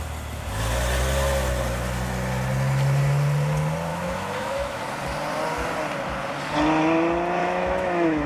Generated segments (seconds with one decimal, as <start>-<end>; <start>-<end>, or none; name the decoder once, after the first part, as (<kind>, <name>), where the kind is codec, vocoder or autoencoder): 3.9-4.8 (autoencoder, DAC-VAE); 7.4-8.3